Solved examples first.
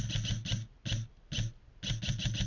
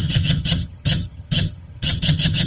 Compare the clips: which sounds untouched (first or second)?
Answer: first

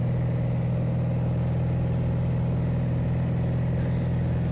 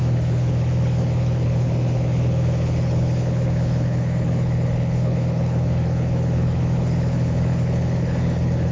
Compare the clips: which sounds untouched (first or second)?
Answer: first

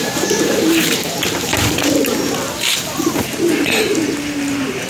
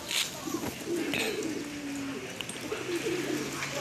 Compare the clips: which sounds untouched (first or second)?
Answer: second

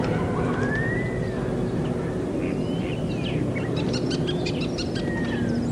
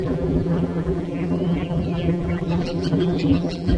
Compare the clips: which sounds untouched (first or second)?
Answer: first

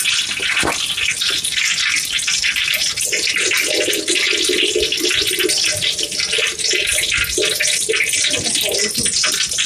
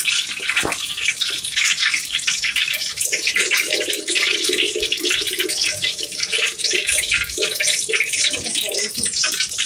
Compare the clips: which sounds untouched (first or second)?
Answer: first